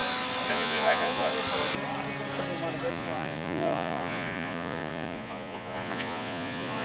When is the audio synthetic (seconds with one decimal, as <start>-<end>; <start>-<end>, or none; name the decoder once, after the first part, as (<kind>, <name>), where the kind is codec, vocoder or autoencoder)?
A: 0.5-1.3 (vocoder, Vocos); 2.9-6.8